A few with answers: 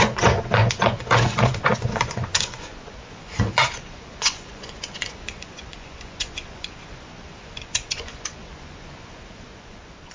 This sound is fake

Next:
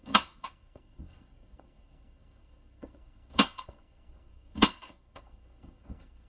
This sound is fake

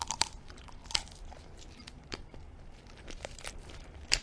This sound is fake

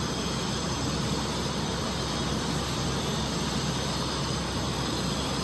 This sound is fake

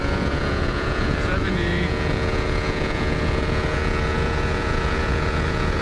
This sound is fake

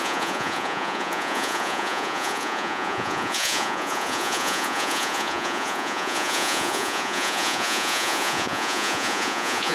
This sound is fake